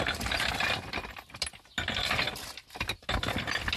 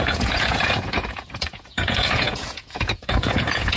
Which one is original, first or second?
first